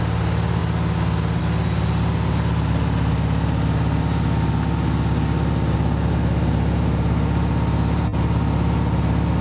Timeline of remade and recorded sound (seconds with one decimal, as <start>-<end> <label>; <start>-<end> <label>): 0.0-9.4 recorded